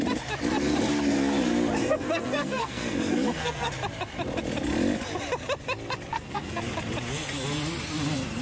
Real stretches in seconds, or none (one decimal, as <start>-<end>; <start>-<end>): 0.0-1.8; 3.7-6.1; 6.6-8.4